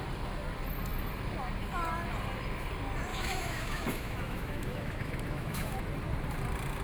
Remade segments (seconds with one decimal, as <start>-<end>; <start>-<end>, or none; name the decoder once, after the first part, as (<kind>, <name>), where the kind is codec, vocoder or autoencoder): 3.1-5.8 (autoencoder, DAC-VAE)